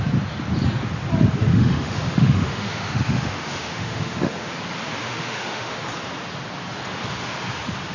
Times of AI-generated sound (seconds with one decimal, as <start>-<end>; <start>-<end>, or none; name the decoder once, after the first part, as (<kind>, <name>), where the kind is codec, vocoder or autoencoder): 1.5-4.5 (autoencoder, DAC-VAE); 5.0-5.8